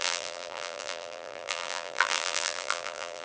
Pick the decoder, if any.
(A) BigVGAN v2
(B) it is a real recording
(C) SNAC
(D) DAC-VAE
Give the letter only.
A